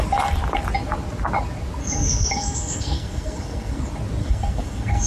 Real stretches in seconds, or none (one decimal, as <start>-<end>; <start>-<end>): 0.0-1.8; 3.8-4.2